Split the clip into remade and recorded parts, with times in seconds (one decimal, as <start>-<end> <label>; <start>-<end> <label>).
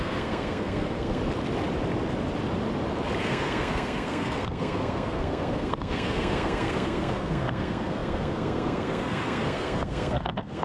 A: 0.0-1.2 remade; 1.2-3.2 recorded; 3.2-10.6 remade